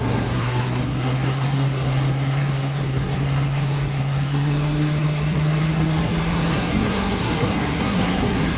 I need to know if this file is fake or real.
fake